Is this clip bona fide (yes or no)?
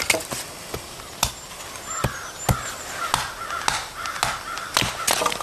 yes